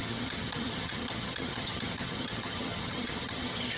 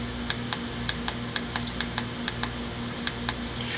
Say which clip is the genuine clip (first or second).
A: second